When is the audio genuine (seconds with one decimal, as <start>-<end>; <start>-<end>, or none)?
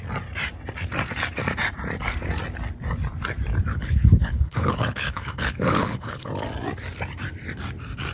0.0-3.7; 6.3-8.1